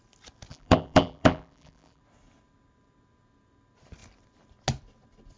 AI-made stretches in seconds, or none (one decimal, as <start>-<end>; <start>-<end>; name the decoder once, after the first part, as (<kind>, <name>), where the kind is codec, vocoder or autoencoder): 0.5-2.0 (vocoder, BigVGAN v2)

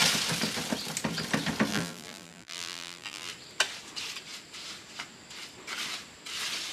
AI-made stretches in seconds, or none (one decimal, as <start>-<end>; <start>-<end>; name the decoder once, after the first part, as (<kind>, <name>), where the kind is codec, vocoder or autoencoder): 1.7-3.3 (vocoder, BigVGAN v2)

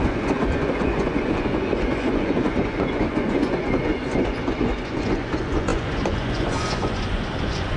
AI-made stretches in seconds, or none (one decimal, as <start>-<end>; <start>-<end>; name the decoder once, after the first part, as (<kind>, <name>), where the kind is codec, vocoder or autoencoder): 0.0-7.8 (vocoder, Vocos)